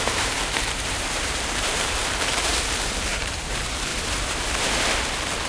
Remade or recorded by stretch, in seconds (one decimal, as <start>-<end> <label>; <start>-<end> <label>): 0.0-3.9 remade; 3.9-5.5 recorded